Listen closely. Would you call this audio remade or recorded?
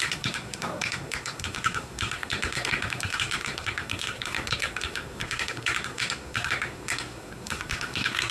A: remade